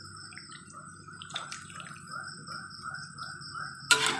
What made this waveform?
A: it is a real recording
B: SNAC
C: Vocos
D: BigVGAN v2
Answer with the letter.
A